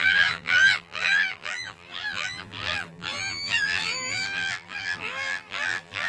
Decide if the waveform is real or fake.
fake